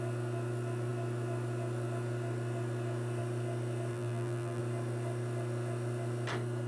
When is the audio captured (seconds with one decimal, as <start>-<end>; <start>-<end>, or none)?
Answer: 0.0-3.9; 4.6-6.7